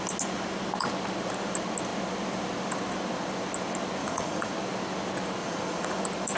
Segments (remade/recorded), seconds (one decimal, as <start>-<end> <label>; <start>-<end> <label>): 0.0-4.0 recorded; 4.0-4.5 remade; 4.5-5.4 recorded; 5.4-6.0 remade; 6.0-6.4 recorded